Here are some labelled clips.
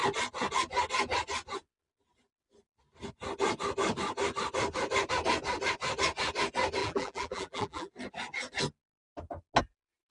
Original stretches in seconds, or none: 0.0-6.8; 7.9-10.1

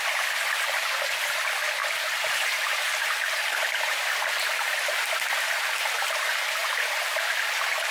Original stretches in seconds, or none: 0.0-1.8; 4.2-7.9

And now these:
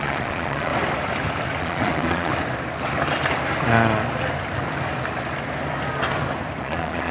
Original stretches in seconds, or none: 0.7-1.6; 2.3-6.6